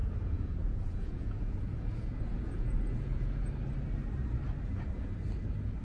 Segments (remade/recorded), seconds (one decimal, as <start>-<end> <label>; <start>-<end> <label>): 0.0-3.5 remade; 3.5-5.8 recorded